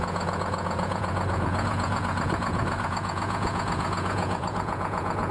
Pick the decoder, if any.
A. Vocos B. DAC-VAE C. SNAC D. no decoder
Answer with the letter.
A